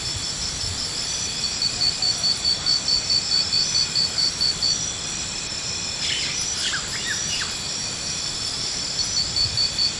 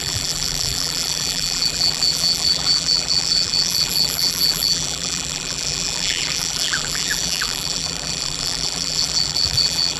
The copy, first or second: second